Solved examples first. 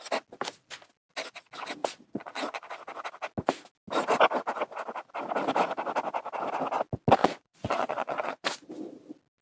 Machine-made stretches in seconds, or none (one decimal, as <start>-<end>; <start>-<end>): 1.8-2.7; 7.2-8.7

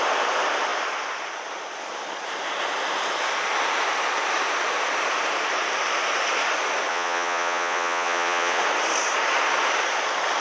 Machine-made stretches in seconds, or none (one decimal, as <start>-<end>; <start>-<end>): 6.9-8.6

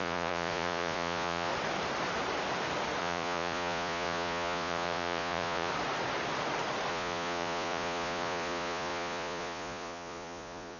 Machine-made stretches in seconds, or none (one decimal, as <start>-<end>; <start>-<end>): 0.0-1.5; 3.0-5.7; 6.9-10.8

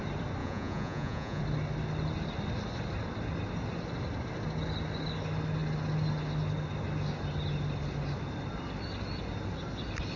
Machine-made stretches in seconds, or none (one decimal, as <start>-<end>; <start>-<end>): 0.4-1.4

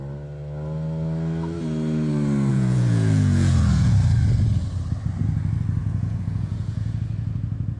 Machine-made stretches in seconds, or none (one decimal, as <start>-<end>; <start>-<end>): 2.5-3.9; 5.8-7.0